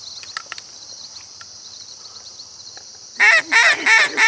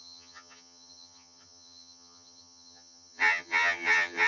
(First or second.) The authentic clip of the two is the first